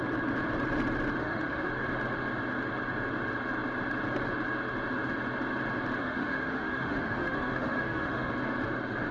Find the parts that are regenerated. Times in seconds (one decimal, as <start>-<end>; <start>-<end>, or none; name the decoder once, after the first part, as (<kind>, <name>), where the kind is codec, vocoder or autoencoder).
1.2-1.7 (autoencoder, DAC-VAE); 6.0-8.3